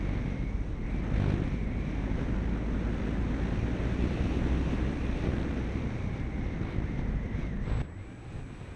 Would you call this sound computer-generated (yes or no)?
no